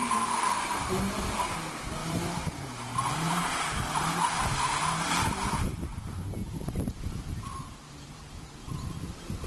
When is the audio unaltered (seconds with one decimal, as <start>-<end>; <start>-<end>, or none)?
none